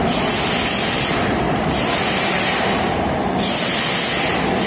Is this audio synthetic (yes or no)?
no